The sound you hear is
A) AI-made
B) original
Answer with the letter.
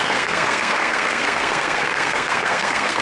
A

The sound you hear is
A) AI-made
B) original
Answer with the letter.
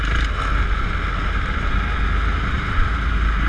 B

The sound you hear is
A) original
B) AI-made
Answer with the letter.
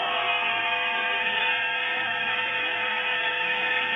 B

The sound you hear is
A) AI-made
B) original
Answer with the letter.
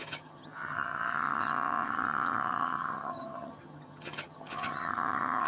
A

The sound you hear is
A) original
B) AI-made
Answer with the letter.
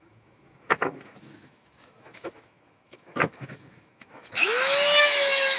B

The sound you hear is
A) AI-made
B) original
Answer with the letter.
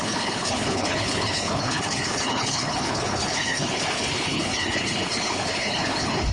A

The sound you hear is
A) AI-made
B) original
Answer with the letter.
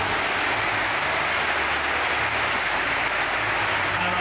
B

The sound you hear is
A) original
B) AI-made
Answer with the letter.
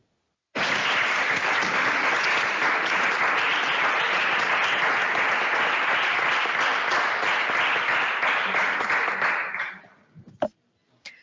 A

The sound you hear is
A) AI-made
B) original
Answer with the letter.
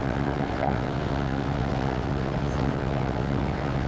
A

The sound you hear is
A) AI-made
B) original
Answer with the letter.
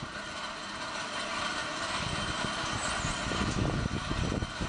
B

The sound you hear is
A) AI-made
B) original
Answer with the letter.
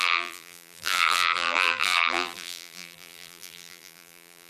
A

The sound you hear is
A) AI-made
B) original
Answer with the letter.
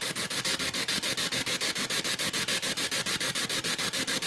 B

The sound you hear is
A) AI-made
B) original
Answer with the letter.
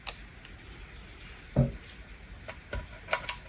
B